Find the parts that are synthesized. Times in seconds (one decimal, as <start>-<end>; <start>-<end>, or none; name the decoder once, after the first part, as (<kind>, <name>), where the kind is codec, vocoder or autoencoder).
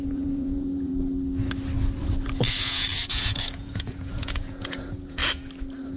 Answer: 0.0-0.9 (vocoder, Vocos); 2.5-5.2